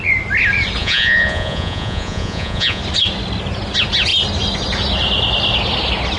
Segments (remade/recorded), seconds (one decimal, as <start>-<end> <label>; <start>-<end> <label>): 0.0-0.8 recorded; 0.8-2.8 remade; 2.8-6.2 recorded